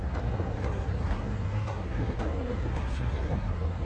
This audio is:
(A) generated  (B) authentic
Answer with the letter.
A